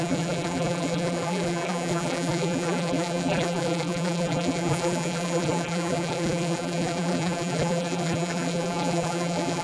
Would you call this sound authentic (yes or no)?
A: no